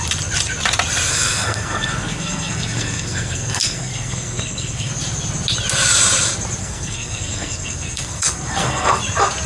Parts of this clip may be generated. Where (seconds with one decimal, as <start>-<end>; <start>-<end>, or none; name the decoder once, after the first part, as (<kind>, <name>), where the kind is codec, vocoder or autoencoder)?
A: 1.1-4.9 (codec, SNAC); 6.6-9.0